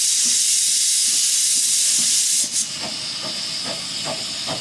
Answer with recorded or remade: recorded